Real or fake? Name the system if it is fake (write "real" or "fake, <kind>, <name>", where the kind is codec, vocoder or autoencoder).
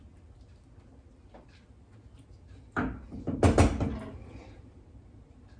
real